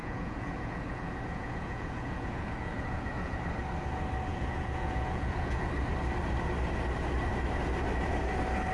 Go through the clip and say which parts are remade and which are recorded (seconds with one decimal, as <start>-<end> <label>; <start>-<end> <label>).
0.0-3.4 remade; 3.4-4.3 recorded; 4.3-5.7 remade; 5.7-8.7 recorded